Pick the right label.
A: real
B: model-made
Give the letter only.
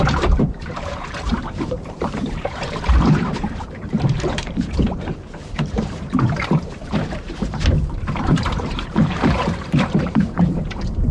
B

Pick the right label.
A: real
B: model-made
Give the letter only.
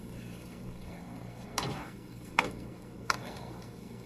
B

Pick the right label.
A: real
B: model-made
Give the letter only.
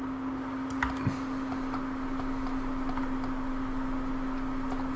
A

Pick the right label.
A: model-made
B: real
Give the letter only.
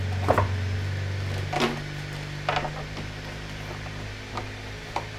B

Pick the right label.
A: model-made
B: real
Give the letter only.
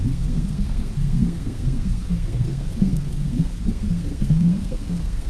A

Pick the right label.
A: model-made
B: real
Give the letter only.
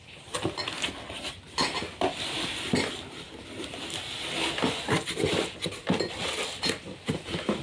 B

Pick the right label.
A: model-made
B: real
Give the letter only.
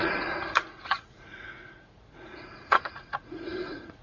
A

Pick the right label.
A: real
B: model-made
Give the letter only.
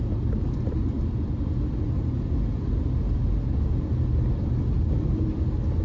A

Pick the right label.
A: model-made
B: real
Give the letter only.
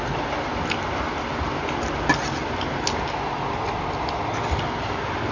B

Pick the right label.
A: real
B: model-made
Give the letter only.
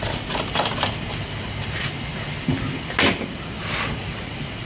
A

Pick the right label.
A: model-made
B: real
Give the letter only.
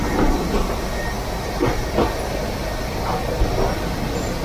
A